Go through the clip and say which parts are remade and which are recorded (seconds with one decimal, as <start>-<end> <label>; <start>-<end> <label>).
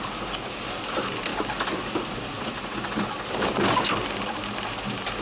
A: 0.0-5.2 recorded